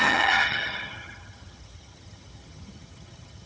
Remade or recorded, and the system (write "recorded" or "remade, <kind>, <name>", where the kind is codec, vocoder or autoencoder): remade, vocoder, HiFi-GAN